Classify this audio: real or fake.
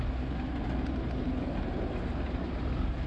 real